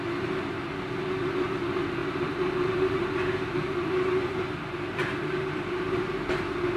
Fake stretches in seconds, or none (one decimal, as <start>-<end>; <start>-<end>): 2.0-6.1